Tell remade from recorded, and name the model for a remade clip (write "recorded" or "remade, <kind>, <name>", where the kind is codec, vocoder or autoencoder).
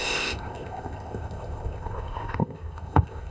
remade, codec, ZipCodec